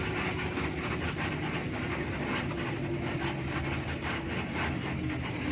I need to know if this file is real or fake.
real